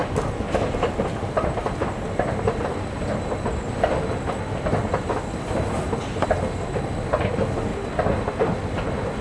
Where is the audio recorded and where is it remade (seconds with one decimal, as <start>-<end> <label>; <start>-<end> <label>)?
0.0-9.2 recorded